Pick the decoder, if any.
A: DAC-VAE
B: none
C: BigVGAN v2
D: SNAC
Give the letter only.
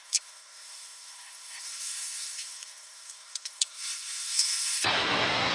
D